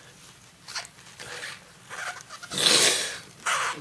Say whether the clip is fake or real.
fake